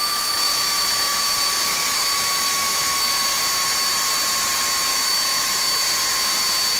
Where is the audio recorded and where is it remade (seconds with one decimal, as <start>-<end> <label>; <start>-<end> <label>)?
0.0-3.4 remade; 3.4-4.9 recorded; 4.9-5.9 remade; 5.9-6.8 recorded